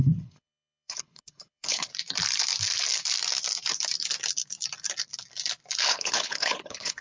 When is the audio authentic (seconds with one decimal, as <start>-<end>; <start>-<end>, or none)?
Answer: 1.9-5.9